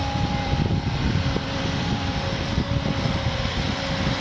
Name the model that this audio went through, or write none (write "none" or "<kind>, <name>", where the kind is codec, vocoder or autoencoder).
vocoder, BigVGAN v2